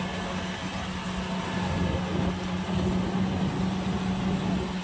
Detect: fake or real real